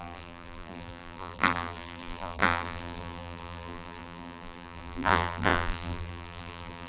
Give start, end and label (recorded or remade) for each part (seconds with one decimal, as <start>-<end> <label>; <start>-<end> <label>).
0.0-6.9 remade